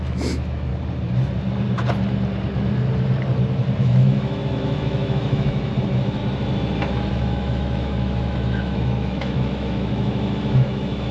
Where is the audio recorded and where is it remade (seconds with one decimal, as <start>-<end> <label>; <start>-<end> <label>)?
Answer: 0.0-0.7 remade; 0.7-3.8 recorded; 3.8-6.2 remade; 6.2-7.1 recorded; 7.1-11.1 remade